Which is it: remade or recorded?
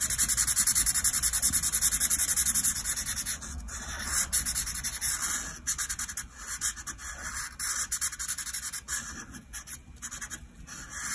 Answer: recorded